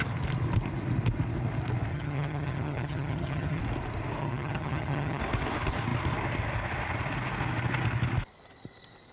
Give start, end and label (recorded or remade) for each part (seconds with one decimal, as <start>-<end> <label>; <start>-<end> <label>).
0.0-1.9 recorded; 1.9-3.6 remade; 3.6-4.2 recorded; 4.2-5.2 remade; 5.2-9.1 recorded